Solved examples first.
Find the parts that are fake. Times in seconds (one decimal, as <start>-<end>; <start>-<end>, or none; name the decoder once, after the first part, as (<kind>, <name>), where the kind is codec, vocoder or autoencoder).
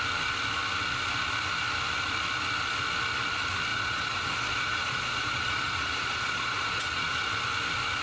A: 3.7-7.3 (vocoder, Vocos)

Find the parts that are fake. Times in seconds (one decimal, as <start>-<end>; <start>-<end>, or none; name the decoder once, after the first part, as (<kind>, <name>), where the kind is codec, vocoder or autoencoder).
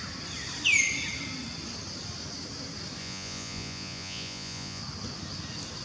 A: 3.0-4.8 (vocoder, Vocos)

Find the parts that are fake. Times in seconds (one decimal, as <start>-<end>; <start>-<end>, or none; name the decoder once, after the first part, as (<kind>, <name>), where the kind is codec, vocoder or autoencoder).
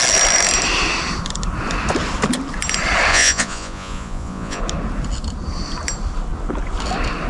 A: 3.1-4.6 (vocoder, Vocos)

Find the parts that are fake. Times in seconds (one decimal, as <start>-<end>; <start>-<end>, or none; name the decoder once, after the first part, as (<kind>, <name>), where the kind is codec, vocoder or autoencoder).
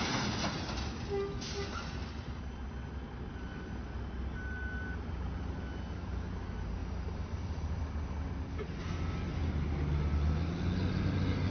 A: 6.8-7.8 (vocoder, BigVGAN v2)